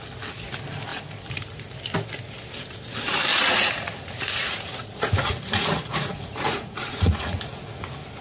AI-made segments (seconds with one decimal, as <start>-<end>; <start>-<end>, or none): 3.3-7.4